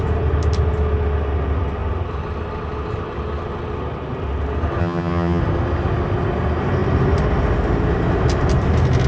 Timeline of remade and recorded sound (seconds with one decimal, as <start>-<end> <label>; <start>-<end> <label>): 0.0-4.8 recorded; 4.8-5.4 remade; 5.4-9.1 recorded